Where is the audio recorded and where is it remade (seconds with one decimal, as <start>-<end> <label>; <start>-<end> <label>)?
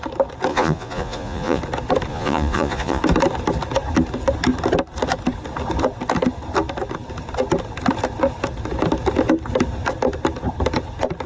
0.0-0.5 recorded; 0.5-1.6 remade; 1.6-2.1 recorded; 2.1-3.0 remade; 3.0-11.3 recorded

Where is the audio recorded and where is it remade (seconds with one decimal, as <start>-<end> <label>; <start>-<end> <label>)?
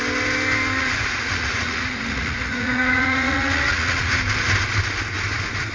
0.0-0.8 recorded; 0.8-4.2 remade; 4.2-5.7 recorded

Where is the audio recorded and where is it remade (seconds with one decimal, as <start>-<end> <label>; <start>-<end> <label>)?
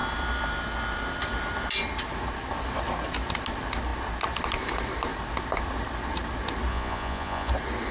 0.0-6.7 recorded; 6.7-7.5 remade; 7.5-7.9 recorded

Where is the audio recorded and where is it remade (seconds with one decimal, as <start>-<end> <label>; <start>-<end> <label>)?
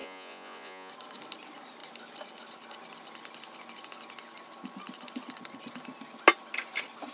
0.0-0.9 remade; 0.9-7.1 recorded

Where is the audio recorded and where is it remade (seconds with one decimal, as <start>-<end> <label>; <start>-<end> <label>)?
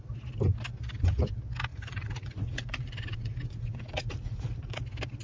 0.0-1.7 recorded; 1.7-4.8 remade; 4.8-5.2 recorded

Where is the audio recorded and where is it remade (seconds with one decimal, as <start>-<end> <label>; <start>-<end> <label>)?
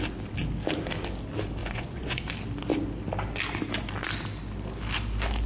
0.0-1.6 recorded; 1.6-2.2 remade; 2.2-5.5 recorded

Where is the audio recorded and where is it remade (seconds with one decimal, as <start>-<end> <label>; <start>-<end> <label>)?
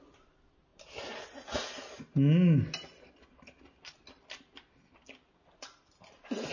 0.0-6.5 recorded